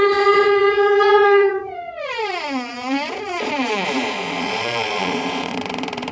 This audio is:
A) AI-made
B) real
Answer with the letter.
A